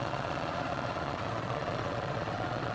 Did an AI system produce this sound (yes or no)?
yes